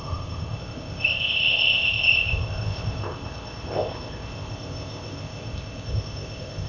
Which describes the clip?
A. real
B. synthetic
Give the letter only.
B